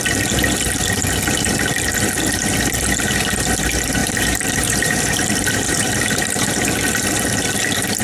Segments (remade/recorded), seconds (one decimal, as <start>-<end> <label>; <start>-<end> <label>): 0.0-4.0 recorded; 4.0-6.5 remade; 6.5-8.0 recorded